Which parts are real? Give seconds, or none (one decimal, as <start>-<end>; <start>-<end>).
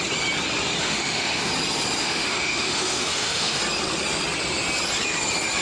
0.0-0.8; 1.5-2.0; 3.6-5.6